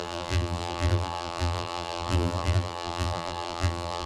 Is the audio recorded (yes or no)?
no